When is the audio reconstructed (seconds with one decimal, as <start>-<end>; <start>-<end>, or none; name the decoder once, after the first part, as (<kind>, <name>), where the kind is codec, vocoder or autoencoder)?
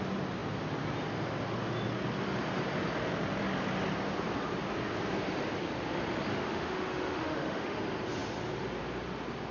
6.3-7.8 (autoencoder, DAC-VAE)